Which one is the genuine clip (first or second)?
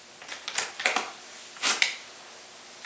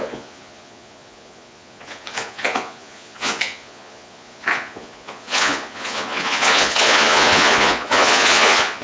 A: first